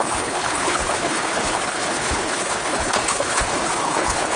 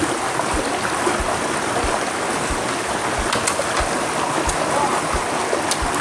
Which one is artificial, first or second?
first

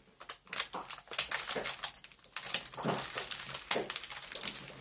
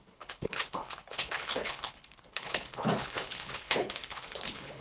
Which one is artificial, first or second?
second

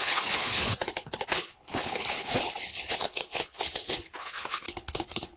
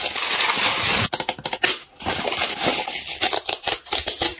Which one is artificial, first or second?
first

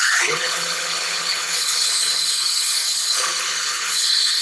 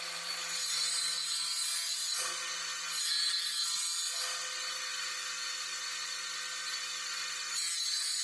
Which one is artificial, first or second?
first